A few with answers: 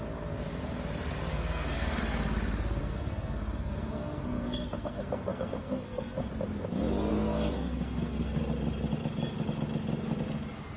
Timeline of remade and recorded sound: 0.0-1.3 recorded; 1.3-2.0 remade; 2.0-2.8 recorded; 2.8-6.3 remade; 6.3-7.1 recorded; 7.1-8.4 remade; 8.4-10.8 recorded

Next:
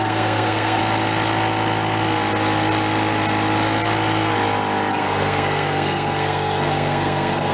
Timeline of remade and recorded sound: 0.0-0.8 remade; 0.8-4.9 recorded; 4.9-7.5 remade

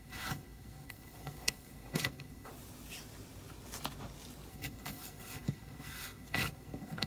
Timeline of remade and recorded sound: 0.0-2.5 remade; 2.5-4.5 recorded; 4.5-7.1 remade

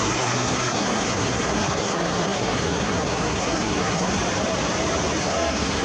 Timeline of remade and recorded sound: 0.0-4.1 remade; 4.1-5.2 recorded; 5.2-5.8 remade

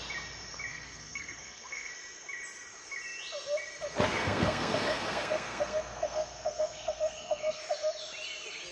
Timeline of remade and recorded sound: 0.0-0.7 recorded; 0.7-1.9 remade; 1.9-4.2 recorded; 4.2-7.6 remade; 7.6-8.7 recorded

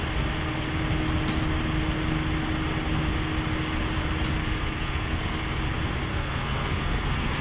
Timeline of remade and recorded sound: 0.0-4.4 recorded; 4.4-5.4 remade; 5.4-6.1 recorded; 6.1-7.4 remade

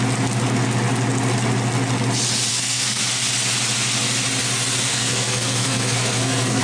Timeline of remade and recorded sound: 0.0-2.5 recorded; 2.5-3.0 remade; 3.0-4.9 recorded; 4.9-6.6 remade

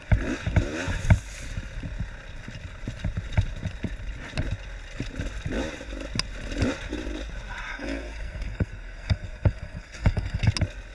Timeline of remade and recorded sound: 0.0-7.7 recorded; 7.7-10.5 remade; 10.5-10.9 recorded